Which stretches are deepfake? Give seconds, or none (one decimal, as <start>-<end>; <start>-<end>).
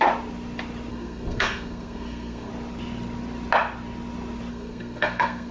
0.9-2.5; 4.5-5.5